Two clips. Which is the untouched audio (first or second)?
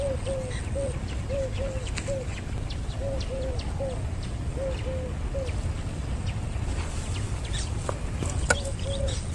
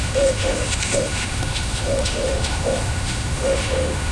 first